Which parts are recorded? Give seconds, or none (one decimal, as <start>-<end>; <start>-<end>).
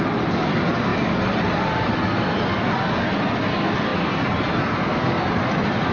0.0-5.9